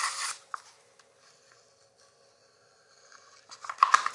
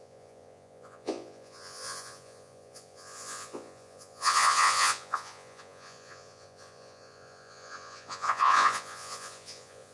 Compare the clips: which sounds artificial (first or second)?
second